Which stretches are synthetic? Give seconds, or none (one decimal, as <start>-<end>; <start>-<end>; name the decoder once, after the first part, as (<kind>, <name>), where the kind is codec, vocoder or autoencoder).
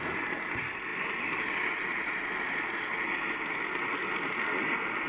none